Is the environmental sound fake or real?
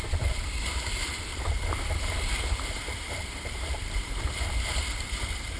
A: fake